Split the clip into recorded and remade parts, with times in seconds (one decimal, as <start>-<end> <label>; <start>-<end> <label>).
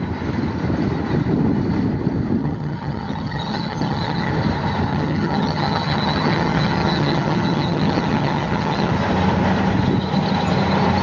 0.0-2.4 recorded; 2.4-4.3 remade; 4.3-4.9 recorded; 4.9-8.9 remade; 8.9-11.0 recorded